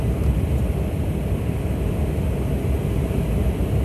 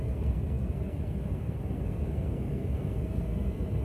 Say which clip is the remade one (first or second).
second